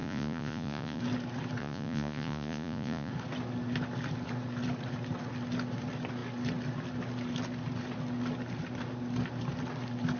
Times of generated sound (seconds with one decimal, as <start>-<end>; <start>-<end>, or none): 0.0-1.0; 1.6-3.1